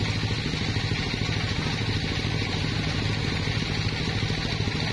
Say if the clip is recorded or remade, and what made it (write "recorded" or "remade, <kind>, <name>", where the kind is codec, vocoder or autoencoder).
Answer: recorded